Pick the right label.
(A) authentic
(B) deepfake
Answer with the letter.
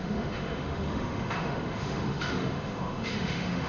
B